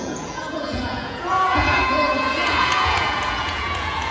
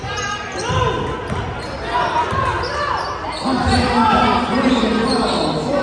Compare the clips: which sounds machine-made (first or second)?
first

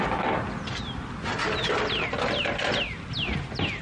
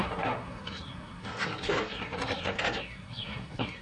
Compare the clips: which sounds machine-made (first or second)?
second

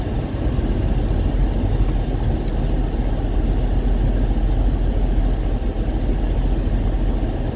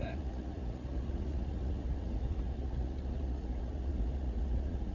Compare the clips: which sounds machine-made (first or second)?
second